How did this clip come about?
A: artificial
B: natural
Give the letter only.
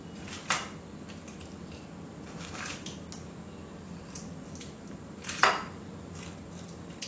B